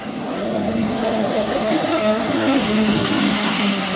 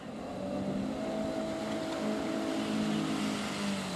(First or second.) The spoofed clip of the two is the first